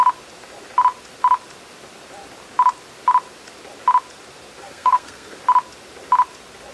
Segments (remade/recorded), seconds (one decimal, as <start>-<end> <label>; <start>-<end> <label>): 0.0-4.6 recorded; 4.6-5.4 remade; 5.4-6.7 recorded